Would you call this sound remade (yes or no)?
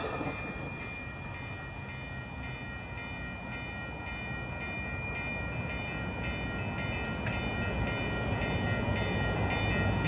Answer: no